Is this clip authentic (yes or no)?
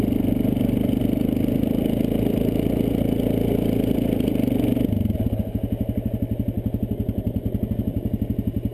yes